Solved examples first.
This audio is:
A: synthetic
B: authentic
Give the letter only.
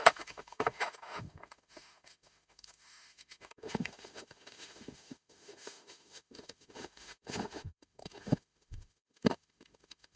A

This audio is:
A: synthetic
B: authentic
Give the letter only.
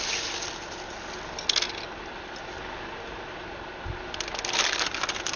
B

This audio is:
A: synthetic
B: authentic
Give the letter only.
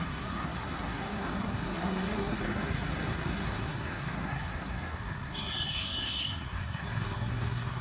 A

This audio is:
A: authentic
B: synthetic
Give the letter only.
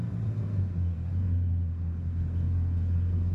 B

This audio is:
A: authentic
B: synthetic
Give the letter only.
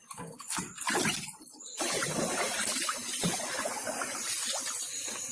A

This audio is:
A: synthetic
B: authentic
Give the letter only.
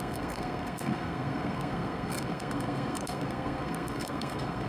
A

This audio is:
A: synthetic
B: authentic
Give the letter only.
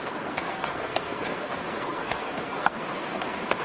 A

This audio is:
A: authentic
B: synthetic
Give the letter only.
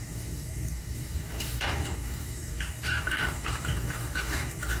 B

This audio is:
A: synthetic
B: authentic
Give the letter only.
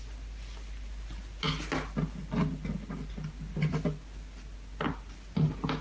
B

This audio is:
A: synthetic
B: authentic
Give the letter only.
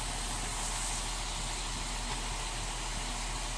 B